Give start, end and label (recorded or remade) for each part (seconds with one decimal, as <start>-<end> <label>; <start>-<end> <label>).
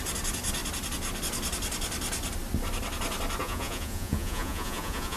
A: 0.0-3.4 recorded; 3.4-5.2 remade